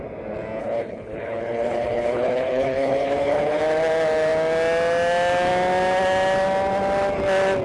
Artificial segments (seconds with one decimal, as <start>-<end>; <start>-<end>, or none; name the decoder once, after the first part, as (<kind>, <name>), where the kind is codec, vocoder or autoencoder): 0.6-3.6 (codec, HILCodec)